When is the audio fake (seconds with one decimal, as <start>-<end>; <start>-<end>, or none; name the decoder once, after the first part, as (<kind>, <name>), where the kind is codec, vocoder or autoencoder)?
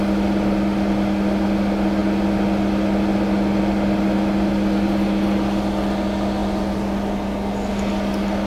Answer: 6.4-6.9 (vocoder, BigVGAN v2)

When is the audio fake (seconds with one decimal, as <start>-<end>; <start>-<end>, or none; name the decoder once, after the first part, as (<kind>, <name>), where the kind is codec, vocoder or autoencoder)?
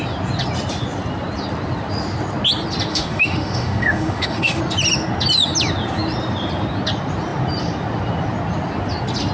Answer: 2.9-4.6 (autoencoder, DAC-VAE)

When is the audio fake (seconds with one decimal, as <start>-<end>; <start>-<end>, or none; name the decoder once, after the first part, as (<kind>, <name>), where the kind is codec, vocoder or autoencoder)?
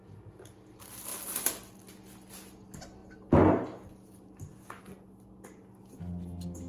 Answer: none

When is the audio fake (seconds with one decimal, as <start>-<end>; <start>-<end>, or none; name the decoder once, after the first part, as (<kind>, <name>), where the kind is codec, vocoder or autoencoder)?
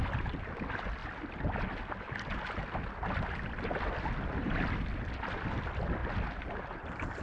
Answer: none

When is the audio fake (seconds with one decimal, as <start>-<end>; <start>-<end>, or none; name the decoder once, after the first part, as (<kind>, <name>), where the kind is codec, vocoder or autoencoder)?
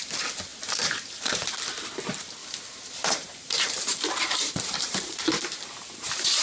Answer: 0.5-1.5 (vocoder, BigVGAN v2); 2.4-6.4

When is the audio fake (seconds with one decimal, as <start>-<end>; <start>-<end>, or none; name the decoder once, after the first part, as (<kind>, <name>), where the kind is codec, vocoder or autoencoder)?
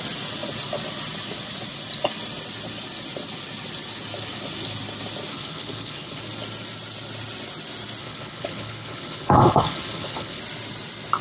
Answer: 5.3-6.2 (codec, HILCodec); 8.0-10.4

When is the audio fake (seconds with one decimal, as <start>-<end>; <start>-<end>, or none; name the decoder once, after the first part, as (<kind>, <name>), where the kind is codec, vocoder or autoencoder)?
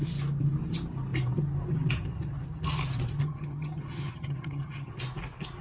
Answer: 3.2-4.9 (vocoder, HiFi-GAN)